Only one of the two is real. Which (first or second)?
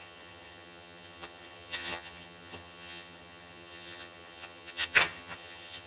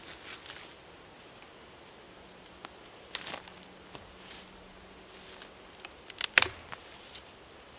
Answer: second